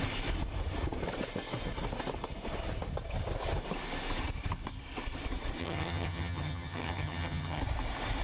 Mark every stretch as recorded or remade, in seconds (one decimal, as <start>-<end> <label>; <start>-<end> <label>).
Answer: 0.0-5.6 recorded; 5.6-7.6 remade; 7.6-8.2 recorded